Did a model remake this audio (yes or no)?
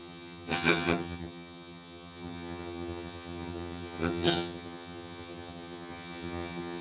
yes